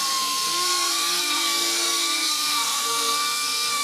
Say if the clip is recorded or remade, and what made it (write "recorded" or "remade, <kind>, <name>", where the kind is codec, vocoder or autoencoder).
remade, codec, SNAC